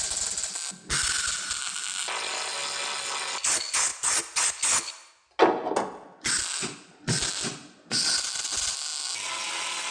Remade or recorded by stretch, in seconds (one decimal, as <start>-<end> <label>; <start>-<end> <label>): 0.0-9.9 recorded